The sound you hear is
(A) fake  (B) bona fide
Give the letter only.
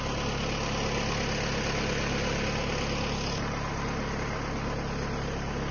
B